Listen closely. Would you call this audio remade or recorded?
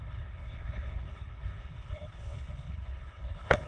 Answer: remade